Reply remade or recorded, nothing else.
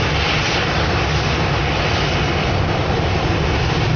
recorded